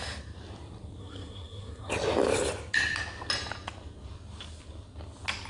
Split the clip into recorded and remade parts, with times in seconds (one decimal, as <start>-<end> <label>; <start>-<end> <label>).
0.0-1.0 recorded; 1.0-1.9 remade; 1.9-5.5 recorded